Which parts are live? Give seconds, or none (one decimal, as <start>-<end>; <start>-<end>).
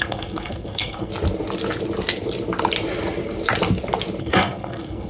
1.1-4.2